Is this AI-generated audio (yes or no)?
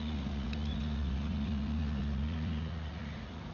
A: yes